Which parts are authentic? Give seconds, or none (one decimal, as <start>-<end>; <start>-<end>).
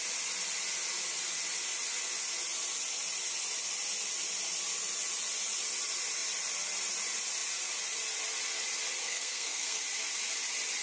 0.0-9.0; 9.8-10.8